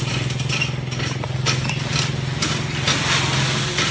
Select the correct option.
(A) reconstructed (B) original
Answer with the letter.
B